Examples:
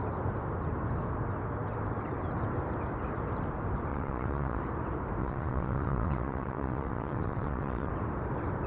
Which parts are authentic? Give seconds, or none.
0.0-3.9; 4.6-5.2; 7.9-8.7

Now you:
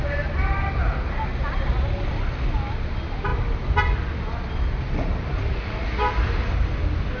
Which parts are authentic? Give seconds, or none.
0.0-7.2

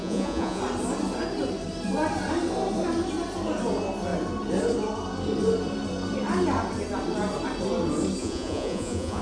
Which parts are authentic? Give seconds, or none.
0.6-8.2

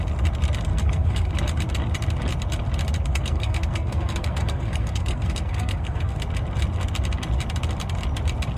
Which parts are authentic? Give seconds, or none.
0.0-0.7; 1.3-3.1; 6.2-8.6

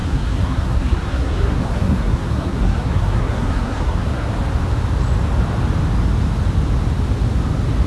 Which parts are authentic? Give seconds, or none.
4.3-7.9

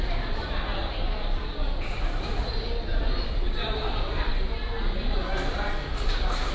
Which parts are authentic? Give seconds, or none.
0.0-2.9; 4.3-6.5

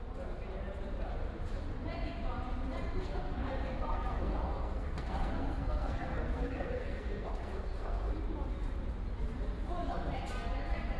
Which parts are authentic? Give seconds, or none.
0.0-3.0; 8.1-11.0

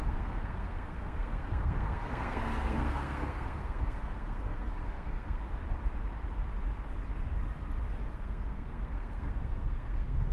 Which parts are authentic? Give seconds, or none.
5.4-8.1